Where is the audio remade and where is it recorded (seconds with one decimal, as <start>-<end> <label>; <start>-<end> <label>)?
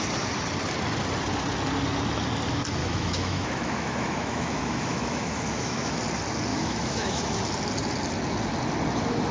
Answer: 0.0-2.8 recorded; 2.8-6.0 remade; 6.0-6.5 recorded; 6.5-7.4 remade; 7.4-9.3 recorded